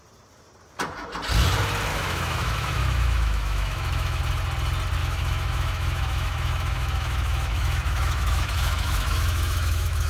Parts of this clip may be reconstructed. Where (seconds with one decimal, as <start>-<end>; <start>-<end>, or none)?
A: 1.9-4.2; 5.0-10.1